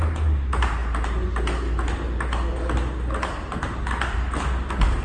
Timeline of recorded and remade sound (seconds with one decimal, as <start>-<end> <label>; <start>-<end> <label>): 0.0-5.0 recorded